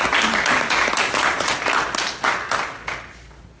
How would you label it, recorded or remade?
recorded